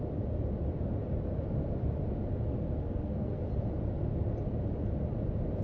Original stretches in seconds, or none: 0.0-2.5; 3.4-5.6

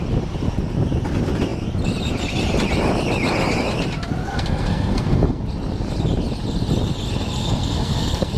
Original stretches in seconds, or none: 0.0-4.2; 5.4-7.4

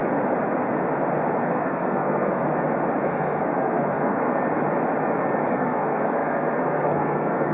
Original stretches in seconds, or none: 0.0-1.5; 2.4-3.0; 4.2-5.5

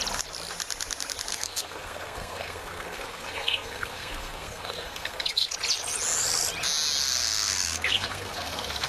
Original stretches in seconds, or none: 0.0-1.3; 5.5-7.0

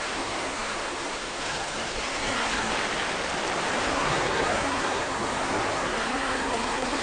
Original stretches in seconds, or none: 2.7-3.8

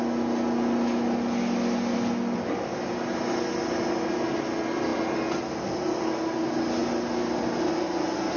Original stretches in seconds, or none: 0.0-8.4

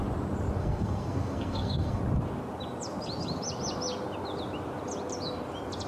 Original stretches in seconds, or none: 0.0-0.6; 2.0-5.9

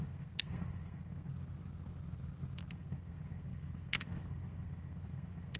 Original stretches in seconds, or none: 1.3-2.7